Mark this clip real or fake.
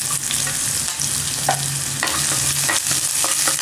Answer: real